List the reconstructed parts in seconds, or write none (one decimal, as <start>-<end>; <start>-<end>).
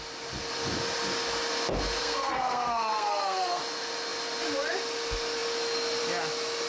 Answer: 2.0-3.6